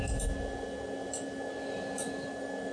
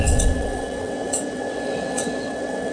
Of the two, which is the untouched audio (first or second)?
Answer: first